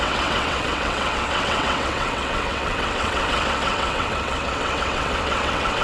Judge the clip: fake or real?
fake